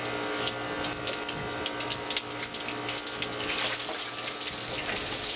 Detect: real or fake real